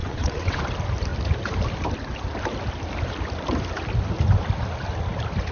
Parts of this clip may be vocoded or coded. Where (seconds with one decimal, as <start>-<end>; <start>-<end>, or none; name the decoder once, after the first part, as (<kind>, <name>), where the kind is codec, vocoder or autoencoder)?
0.0-0.6 (vocoder, WaveNeXt)